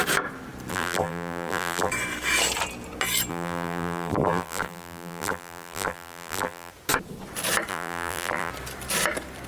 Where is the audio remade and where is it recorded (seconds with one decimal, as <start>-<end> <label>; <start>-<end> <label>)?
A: 0.0-0.7 recorded; 0.7-1.9 remade; 1.9-3.3 recorded; 3.3-6.7 remade; 6.7-7.7 recorded; 7.7-8.5 remade; 8.5-9.5 recorded